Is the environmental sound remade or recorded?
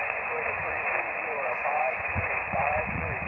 remade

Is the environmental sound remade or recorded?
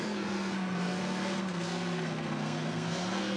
remade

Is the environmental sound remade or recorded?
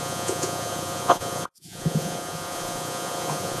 remade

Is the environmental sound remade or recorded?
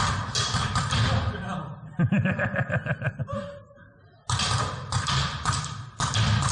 recorded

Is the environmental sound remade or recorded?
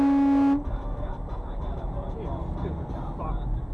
recorded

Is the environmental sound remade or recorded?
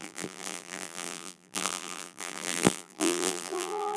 remade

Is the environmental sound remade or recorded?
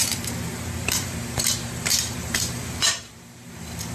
remade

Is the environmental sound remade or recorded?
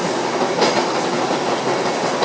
recorded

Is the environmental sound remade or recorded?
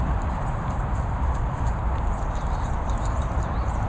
remade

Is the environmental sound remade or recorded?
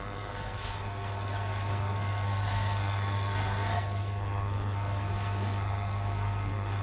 remade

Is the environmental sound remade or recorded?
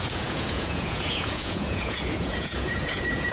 remade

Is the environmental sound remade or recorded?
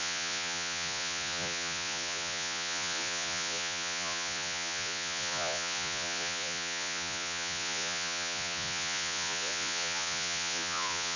remade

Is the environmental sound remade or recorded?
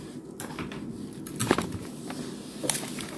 recorded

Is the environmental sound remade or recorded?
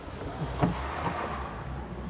recorded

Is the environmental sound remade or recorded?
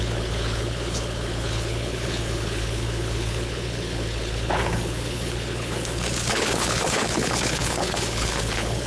remade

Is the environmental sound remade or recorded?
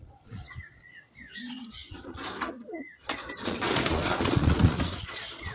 remade